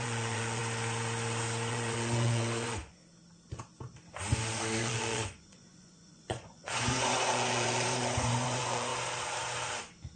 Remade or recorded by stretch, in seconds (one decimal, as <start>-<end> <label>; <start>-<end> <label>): 0.0-0.6 remade; 0.6-1.7 recorded; 1.7-3.0 remade; 3.0-4.8 recorded; 4.8-8.9 remade; 8.9-10.2 recorded